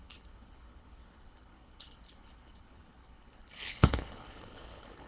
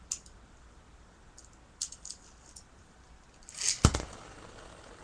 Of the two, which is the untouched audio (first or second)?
second